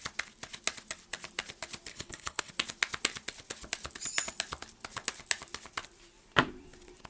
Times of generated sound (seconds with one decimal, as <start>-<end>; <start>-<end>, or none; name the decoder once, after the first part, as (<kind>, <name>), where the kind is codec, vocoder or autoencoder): 1.9-2.5 (codec, HILCodec)